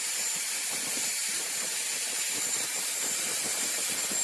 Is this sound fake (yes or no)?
yes